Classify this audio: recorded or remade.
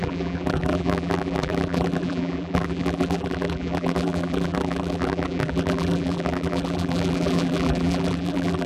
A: remade